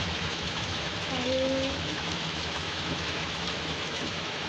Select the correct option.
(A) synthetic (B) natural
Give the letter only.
A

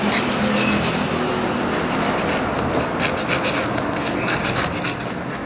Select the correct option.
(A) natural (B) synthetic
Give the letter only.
A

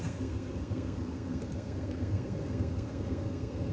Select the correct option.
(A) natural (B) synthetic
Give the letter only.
B